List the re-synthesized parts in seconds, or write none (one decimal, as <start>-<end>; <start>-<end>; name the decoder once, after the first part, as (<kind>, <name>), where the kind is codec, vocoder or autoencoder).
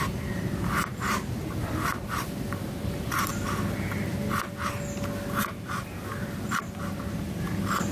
none